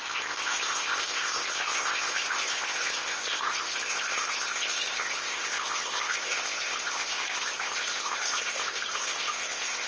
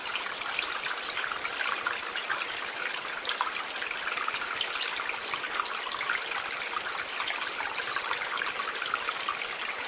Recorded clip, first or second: second